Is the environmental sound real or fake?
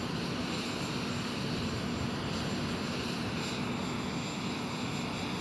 real